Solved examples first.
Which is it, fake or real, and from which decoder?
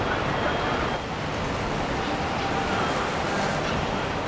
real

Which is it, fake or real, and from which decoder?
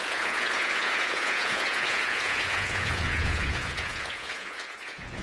fake, vocoder, Vocos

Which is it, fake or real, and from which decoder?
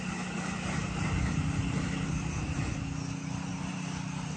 real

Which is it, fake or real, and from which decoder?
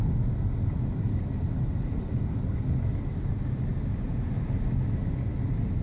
real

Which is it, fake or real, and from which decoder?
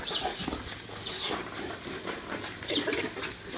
real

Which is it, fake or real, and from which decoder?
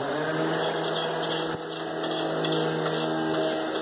real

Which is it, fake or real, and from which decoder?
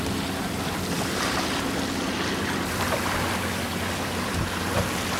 real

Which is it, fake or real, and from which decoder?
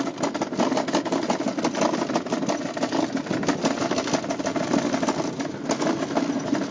real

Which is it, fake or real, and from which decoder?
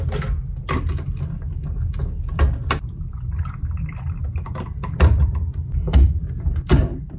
real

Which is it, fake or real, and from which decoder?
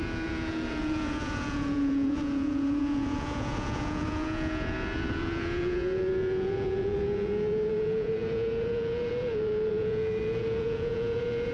fake, vocoder, Vocos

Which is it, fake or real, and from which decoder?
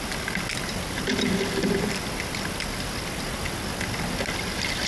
real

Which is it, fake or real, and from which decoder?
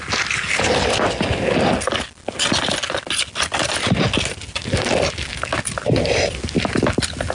real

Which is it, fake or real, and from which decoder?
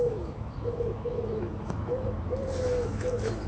fake, autoencoder, DAC-VAE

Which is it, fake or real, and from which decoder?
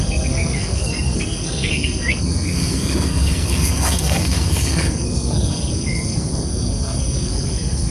fake, codec, SNAC